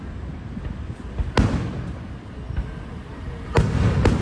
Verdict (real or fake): real